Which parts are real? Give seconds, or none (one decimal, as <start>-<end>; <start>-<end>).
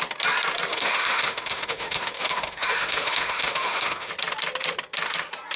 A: 0.0-0.7; 4.1-5.6